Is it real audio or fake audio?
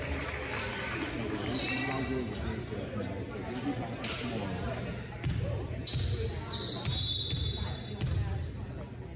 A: real